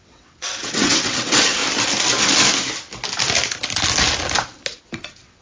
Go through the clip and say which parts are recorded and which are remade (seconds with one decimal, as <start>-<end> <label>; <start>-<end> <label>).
0.0-1.6 remade; 1.6-4.8 recorded; 4.8-5.4 remade